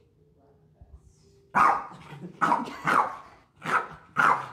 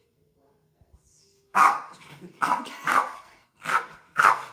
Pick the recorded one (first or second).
first